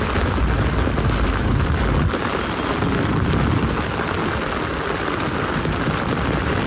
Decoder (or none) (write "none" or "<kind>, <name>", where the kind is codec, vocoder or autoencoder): none